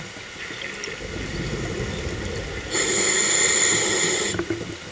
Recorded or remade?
recorded